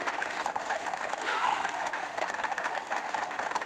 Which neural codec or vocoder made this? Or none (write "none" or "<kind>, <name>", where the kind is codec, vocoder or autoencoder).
autoencoder, DAC-VAE